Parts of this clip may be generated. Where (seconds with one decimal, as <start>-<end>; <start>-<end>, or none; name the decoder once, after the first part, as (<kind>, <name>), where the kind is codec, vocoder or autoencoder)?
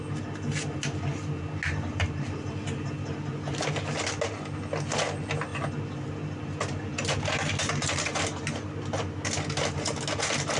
none